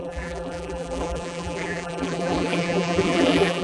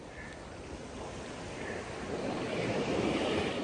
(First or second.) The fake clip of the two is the first